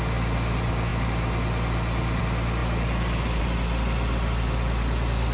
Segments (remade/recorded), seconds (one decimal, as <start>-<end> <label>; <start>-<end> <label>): 0.0-5.3 recorded